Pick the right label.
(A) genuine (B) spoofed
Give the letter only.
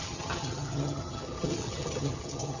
B